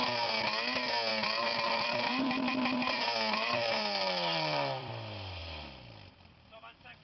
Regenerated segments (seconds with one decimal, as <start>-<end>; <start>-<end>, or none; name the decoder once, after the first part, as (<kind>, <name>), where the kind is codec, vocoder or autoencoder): 1.1-4.9 (vocoder, BigVGAN v2); 5.4-7.0

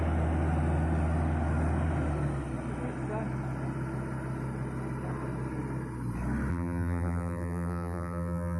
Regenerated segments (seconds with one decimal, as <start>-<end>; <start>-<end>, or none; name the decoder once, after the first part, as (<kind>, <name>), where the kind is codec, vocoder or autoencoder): 6.5-8.6 (vocoder, BigVGAN v2)

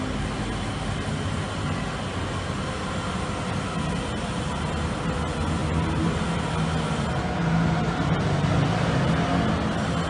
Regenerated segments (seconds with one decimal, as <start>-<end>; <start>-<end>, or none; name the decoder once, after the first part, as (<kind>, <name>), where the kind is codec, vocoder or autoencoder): none

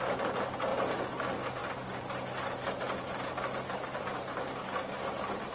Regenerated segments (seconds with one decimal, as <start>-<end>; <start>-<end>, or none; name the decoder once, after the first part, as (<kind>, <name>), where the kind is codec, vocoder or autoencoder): 1.6-4.9 (vocoder, BigVGAN v2)